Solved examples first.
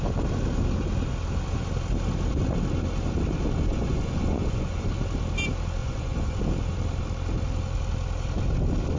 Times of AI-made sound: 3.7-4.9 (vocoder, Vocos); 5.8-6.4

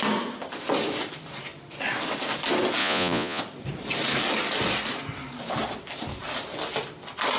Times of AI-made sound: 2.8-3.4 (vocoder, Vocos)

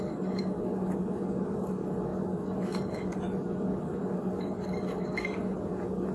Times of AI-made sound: 0.0-6.1 (codec, DAC)

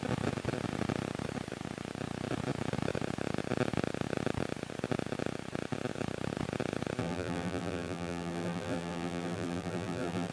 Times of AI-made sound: 7.0-10.3 (vocoder, BigVGAN v2)

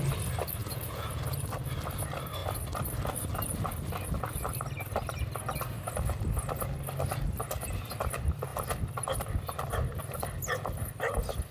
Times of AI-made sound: 0.6-1.2 (vocoder, Vocos)

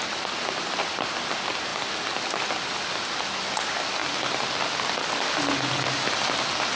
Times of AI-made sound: none

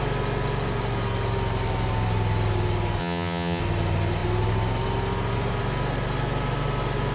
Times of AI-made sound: 3.0-3.6 (vocoder, HiFi-GAN)

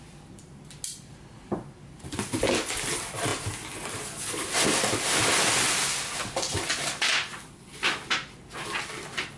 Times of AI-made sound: none